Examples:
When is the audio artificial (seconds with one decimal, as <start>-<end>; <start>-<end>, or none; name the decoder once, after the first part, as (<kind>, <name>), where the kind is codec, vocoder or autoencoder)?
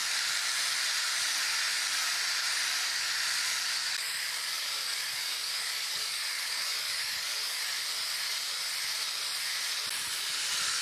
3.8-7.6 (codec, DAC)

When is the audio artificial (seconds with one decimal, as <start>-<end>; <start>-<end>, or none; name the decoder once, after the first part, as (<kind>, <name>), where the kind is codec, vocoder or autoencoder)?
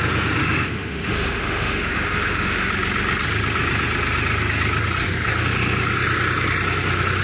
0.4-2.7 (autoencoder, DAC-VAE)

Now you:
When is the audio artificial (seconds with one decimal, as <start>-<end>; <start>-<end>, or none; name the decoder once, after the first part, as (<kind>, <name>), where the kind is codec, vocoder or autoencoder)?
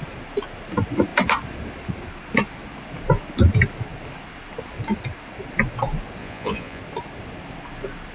6.2-6.8 (vocoder, Vocos)